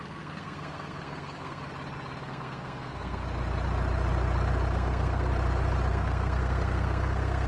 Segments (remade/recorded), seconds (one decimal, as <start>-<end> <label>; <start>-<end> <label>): 0.0-1.6 remade; 1.6-2.2 recorded; 2.2-3.2 remade; 3.2-4.7 recorded; 4.7-5.3 remade; 5.3-5.9 recorded; 5.9-7.5 remade

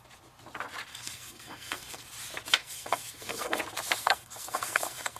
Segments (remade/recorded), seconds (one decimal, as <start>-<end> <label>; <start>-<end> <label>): 0.0-0.9 recorded; 0.9-2.1 remade; 2.1-2.6 recorded; 2.6-3.6 remade; 3.6-4.0 recorded; 4.0-5.2 remade

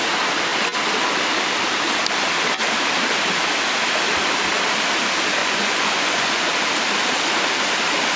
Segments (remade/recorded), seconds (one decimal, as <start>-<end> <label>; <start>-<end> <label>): 0.0-5.4 recorded; 5.4-6.5 remade; 6.5-8.2 recorded

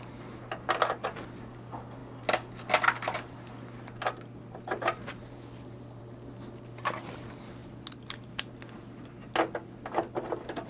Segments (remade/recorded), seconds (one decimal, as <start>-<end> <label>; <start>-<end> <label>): 0.0-10.7 recorded

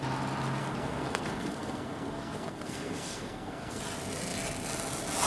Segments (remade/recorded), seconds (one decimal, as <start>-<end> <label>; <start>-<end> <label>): 0.0-0.6 recorded; 0.6-3.8 remade; 3.8-5.3 recorded

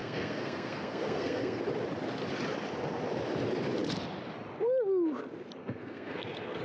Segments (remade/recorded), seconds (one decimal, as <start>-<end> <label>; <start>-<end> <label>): 0.0-1.6 remade; 1.6-5.6 recorded; 5.6-6.6 remade